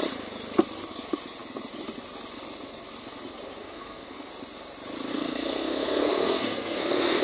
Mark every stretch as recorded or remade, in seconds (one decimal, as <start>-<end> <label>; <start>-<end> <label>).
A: 0.0-3.6 recorded; 3.6-4.3 remade; 4.3-5.1 recorded; 5.1-7.2 remade